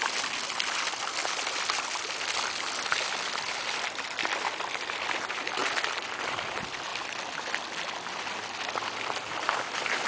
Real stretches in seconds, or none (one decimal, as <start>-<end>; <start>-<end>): 1.2-3.6; 5.6-6.2; 6.9-9.6